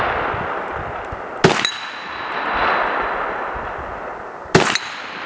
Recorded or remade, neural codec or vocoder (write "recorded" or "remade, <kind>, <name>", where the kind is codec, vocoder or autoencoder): recorded